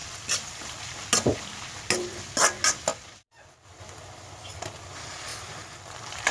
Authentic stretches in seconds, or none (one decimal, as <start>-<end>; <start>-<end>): 0.0-6.3